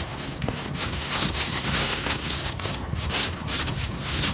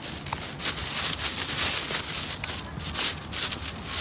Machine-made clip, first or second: first